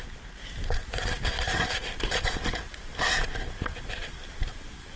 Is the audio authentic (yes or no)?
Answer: yes